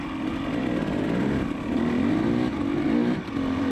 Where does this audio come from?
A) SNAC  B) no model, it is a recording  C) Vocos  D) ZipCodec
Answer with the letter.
B